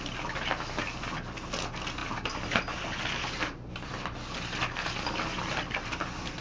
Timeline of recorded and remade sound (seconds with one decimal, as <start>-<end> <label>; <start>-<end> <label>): 0.0-6.4 recorded